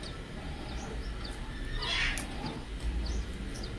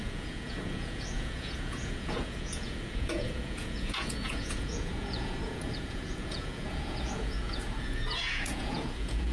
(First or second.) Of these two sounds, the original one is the first